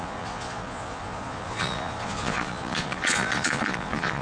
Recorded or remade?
remade